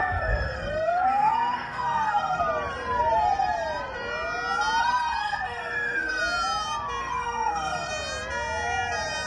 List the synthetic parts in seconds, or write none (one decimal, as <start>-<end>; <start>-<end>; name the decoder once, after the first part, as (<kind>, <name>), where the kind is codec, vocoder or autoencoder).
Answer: 0.0-2.4 (codec, SNAC); 4.8-6.2; 7.0-7.9

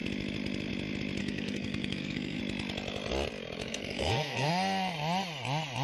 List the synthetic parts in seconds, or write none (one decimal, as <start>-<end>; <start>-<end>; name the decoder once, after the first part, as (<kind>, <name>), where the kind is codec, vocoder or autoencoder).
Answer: 1.2-2.4 (codec, SNAC); 3.6-4.5